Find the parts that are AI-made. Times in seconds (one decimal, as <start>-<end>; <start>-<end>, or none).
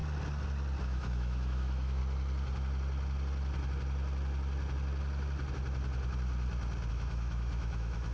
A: 0.8-2.0; 6.9-8.1